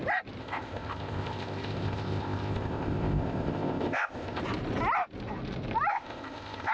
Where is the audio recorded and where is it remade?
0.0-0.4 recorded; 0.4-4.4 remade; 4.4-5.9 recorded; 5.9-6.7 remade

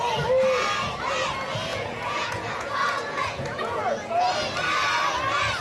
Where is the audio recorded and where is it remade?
0.0-1.7 recorded; 1.7-4.3 remade; 4.3-5.6 recorded

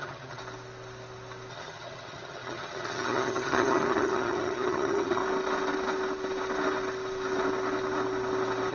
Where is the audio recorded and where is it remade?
0.0-0.4 remade; 0.4-1.5 recorded; 1.5-5.2 remade; 5.2-8.7 recorded

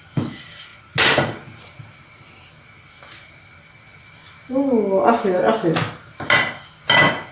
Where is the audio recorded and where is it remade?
0.0-7.3 recorded

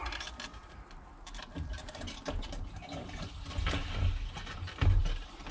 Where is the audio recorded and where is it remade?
0.0-0.5 recorded; 0.5-3.3 remade; 3.3-5.5 recorded

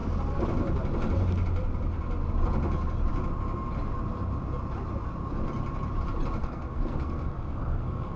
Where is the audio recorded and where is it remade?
0.0-6.4 recorded; 6.4-8.2 remade